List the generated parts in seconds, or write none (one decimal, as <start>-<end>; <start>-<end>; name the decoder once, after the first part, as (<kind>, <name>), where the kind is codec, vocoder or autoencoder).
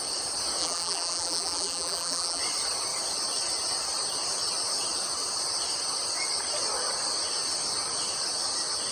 0.6-2.4 (vocoder, BigVGAN v2)